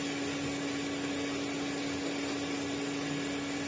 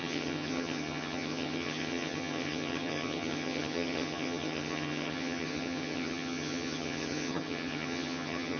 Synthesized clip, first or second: second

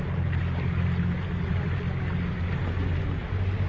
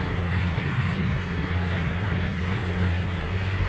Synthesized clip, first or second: second